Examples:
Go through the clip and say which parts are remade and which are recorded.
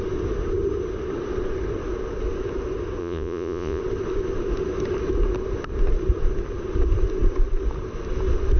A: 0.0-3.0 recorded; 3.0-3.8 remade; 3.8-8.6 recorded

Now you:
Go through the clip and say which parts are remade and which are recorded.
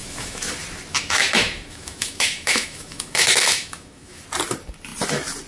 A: 0.0-0.5 remade; 0.5-0.9 recorded; 0.9-4.2 remade; 4.2-5.5 recorded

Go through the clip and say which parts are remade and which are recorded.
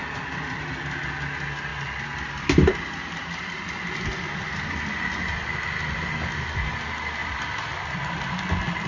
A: 0.0-8.9 recorded